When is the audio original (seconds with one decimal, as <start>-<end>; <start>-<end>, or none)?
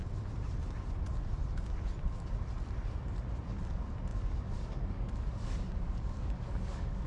0.0-4.1